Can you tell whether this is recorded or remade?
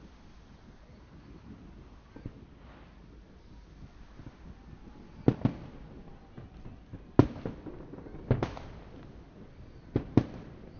recorded